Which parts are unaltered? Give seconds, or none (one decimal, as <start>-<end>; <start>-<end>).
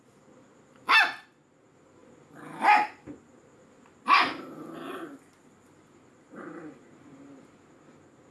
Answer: 0.0-8.3